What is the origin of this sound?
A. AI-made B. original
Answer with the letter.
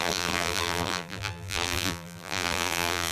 A